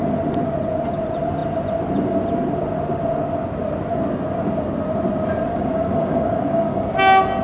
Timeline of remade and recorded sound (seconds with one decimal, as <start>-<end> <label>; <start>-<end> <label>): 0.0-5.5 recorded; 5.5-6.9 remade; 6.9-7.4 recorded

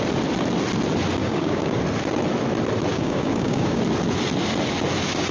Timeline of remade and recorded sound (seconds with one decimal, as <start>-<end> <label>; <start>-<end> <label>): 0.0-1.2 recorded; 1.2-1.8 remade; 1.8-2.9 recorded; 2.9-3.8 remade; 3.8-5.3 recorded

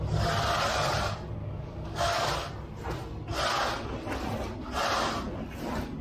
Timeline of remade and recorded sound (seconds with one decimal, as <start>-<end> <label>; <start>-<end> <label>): 0.0-1.4 recorded; 1.4-2.3 remade; 2.3-6.0 recorded

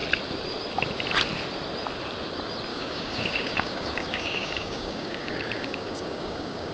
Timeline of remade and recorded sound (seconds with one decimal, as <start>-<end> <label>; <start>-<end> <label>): 0.0-2.7 recorded; 2.7-6.7 remade

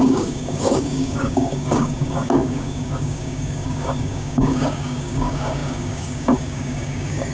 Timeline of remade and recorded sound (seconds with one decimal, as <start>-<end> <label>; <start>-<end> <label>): 0.0-7.3 remade